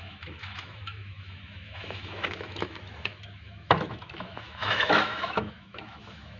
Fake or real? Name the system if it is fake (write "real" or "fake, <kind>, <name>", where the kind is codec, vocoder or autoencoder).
fake, autoencoder, DAC-VAE